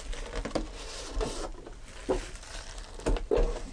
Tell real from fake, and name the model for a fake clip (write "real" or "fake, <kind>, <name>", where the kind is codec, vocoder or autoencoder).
real